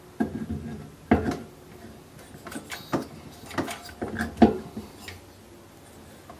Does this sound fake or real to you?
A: real